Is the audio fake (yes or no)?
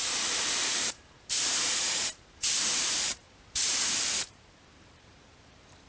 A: yes